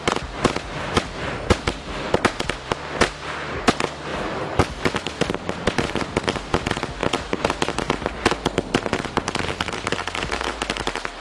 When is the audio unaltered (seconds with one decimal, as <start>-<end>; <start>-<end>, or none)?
0.0-4.1; 6.2-11.2

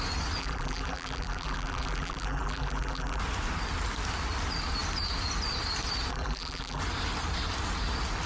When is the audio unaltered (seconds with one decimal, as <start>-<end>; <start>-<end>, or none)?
0.0-0.4; 3.2-6.1; 6.8-8.3

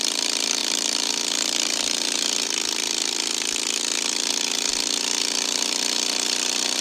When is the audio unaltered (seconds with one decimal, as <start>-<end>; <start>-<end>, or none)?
none

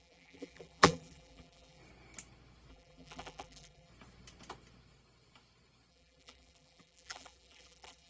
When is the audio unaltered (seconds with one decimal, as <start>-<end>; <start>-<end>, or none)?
1.8-2.7; 3.9-5.9

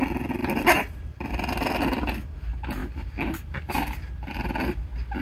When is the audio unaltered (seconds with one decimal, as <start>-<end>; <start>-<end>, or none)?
0.0-0.4; 1.0-2.8; 4.3-5.2

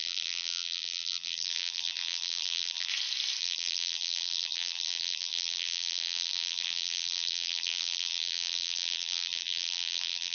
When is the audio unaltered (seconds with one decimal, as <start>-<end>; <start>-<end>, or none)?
2.9-3.4

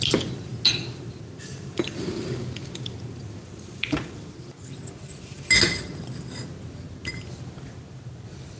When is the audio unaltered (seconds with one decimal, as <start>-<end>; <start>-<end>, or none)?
0.0-8.6